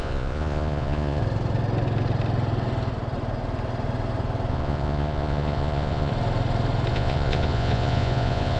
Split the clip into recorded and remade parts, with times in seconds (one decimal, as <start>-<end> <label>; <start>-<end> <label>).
0.0-1.2 remade; 1.2-4.5 recorded; 4.5-6.1 remade; 6.1-6.9 recorded; 6.9-8.6 remade